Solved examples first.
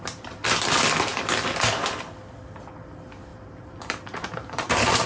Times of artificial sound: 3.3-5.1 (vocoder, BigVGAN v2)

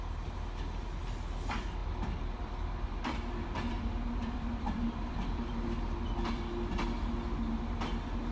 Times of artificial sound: 1.8-3.7 (vocoder, BigVGAN v2); 4.2-5.5

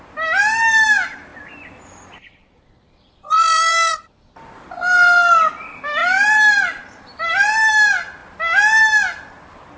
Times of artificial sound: 1.3-4.7 (vocoder, BigVGAN v2); 6.0-7.7

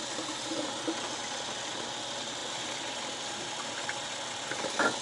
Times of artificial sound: none